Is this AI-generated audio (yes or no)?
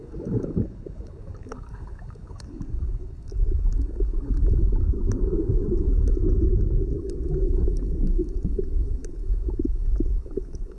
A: yes